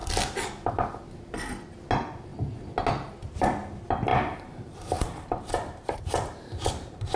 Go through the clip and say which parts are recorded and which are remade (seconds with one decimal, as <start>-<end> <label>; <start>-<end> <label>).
0.0-4.1 recorded; 4.1-7.2 remade

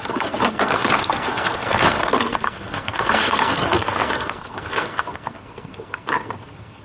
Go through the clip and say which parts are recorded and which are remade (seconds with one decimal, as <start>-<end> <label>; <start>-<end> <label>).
0.0-6.8 remade

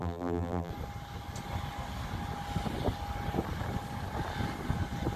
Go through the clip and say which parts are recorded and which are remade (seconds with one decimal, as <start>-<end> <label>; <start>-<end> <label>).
0.0-0.7 remade; 0.7-5.2 recorded

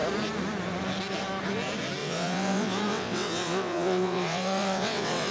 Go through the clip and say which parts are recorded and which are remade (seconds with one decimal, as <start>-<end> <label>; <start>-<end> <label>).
0.0-2.0 recorded; 2.0-5.3 remade

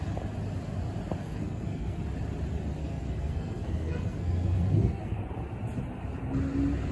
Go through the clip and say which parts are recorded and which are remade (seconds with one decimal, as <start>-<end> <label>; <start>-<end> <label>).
0.0-1.2 recorded; 1.2-2.0 remade; 2.0-2.8 recorded; 2.8-5.2 remade; 5.2-6.9 recorded